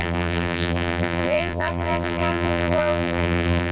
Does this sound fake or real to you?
fake